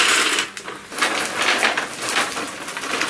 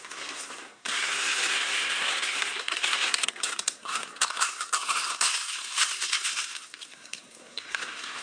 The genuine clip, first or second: first